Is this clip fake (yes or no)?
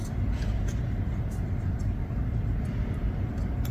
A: no